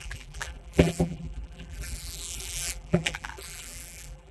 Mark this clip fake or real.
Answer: fake